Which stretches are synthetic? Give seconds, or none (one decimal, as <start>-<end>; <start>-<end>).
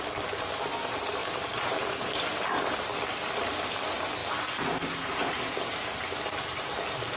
1.2-3.0